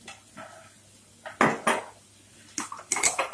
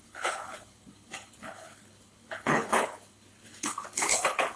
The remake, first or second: second